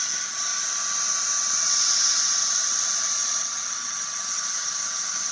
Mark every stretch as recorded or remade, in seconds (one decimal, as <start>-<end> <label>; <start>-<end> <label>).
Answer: 0.0-0.5 remade; 0.5-1.2 recorded; 1.2-2.0 remade; 2.0-2.5 recorded; 2.5-5.3 remade